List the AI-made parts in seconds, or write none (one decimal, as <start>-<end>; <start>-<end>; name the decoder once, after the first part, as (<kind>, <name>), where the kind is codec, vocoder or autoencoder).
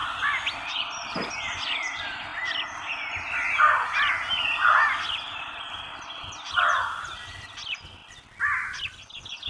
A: none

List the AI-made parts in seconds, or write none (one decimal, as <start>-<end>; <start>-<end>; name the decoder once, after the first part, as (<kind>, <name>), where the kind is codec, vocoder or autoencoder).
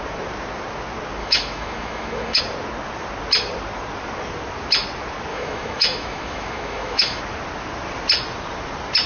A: 1.2-2.4 (autoencoder, DAC-VAE); 5.3-7.2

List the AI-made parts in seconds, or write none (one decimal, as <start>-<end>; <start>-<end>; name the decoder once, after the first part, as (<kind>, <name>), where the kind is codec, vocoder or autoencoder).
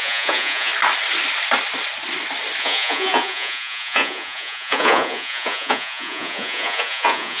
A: 0.0-0.7 (vocoder, Vocos); 2.6-7.4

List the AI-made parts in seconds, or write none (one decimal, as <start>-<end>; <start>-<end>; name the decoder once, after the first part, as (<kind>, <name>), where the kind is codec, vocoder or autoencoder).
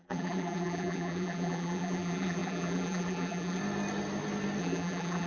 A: 0.0-3.6 (vocoder, BigVGAN v2); 4.6-5.3